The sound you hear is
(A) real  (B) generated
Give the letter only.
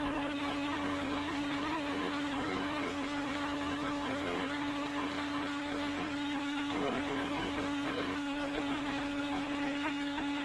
B